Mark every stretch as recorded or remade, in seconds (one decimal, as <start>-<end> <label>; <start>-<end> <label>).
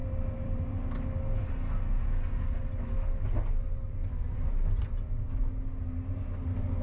0.0-0.6 remade; 0.6-6.8 recorded